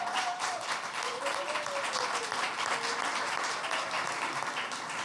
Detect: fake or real real